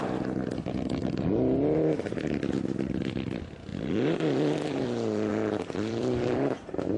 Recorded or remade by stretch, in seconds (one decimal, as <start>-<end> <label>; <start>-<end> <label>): 0.0-1.0 remade; 1.0-2.4 recorded; 2.4-7.0 remade